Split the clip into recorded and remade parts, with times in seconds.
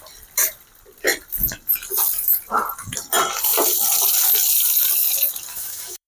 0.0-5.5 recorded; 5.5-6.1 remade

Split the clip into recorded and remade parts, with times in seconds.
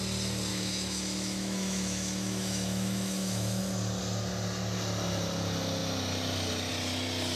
0.0-0.5 recorded; 0.5-3.6 remade; 3.6-7.4 recorded